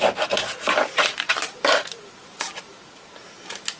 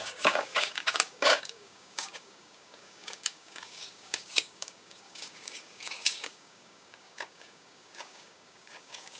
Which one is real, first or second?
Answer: first